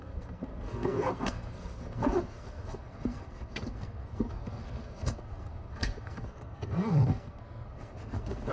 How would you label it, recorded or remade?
remade